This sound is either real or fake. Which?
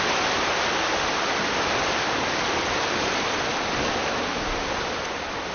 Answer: real